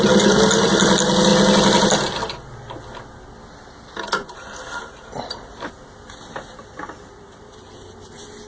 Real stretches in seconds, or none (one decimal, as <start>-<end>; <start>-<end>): 0.0-8.5